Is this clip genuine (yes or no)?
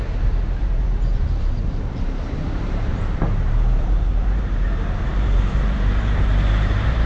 no